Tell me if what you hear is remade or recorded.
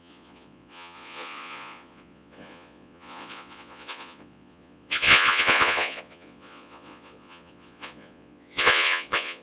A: remade